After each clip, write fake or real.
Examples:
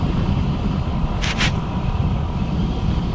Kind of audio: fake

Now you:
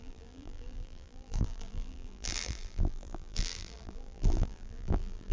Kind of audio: fake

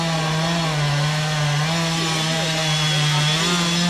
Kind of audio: real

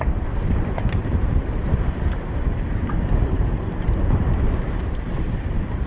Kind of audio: fake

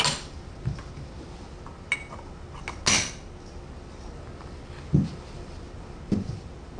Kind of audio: real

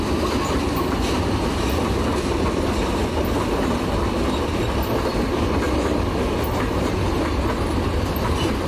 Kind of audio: real